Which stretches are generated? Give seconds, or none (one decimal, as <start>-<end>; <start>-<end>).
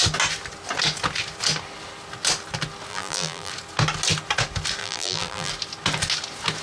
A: 2.9-3.5; 4.8-5.5